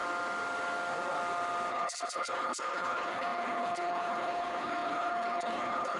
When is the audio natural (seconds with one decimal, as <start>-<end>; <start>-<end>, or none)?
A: 0.0-1.7